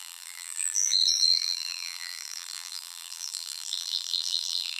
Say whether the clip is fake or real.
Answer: fake